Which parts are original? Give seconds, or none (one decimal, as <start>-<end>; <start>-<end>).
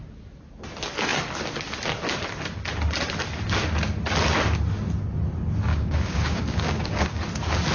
0.0-5.7; 7.2-7.7